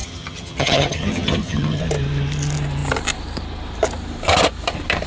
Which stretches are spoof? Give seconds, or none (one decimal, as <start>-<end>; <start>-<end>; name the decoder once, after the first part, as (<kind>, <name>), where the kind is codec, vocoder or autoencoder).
0.0-1.8 (vocoder, HiFi-GAN)